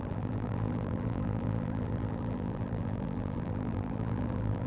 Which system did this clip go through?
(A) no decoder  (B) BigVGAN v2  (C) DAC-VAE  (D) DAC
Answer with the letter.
B